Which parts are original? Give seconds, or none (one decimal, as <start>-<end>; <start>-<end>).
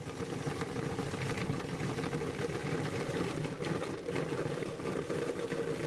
0.0-5.9